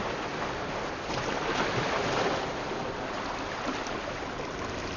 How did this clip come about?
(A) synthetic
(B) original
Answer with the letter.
B